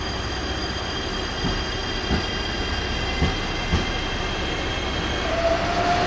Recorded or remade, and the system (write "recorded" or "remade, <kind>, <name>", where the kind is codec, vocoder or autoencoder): recorded